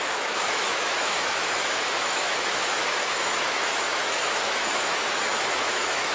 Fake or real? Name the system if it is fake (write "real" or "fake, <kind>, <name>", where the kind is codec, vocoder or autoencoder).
fake, autoencoder, DAC-VAE